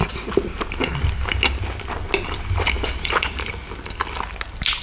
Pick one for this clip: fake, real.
real